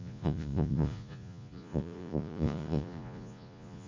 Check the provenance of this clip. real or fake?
fake